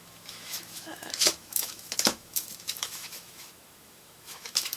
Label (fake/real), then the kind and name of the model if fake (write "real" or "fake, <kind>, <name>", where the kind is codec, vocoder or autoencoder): fake, autoencoder, DAC-VAE